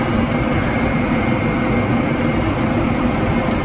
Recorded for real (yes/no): no